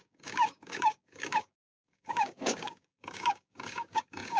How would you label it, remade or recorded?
remade